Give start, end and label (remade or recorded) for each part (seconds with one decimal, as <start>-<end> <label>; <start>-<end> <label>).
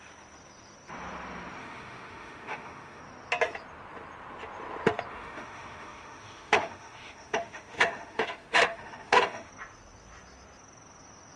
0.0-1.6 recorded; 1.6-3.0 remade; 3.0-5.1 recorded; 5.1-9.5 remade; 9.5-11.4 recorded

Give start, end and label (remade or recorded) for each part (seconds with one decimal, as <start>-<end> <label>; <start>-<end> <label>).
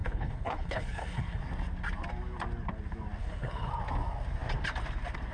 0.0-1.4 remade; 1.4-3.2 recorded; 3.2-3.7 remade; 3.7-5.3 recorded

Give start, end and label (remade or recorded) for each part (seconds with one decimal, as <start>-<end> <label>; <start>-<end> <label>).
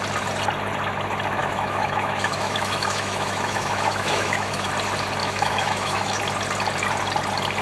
0.0-1.4 recorded; 1.4-4.7 remade; 4.7-5.2 recorded; 5.2-6.2 remade; 6.2-7.6 recorded